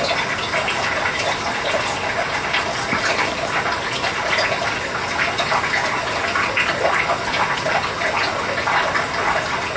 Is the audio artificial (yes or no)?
no